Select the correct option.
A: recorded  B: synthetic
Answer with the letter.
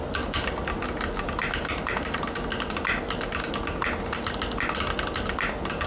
A